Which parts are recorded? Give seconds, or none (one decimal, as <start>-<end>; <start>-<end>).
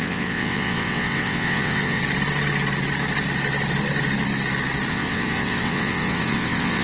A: 2.0-4.9